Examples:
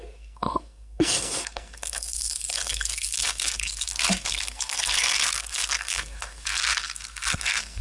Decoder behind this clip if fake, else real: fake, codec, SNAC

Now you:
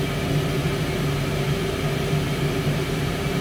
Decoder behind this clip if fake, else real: real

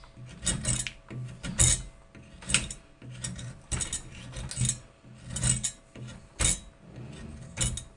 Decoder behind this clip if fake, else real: real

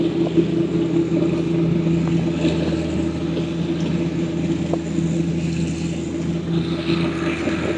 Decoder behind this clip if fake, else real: real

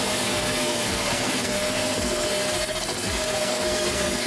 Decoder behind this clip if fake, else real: fake, codec, SNAC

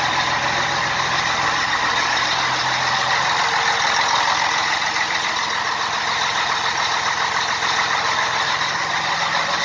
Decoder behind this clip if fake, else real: real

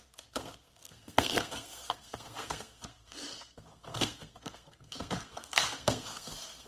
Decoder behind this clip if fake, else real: fake, codec, SNAC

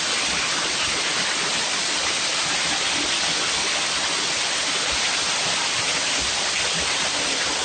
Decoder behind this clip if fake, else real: real